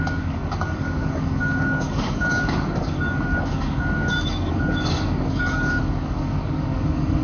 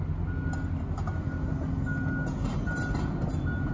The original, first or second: second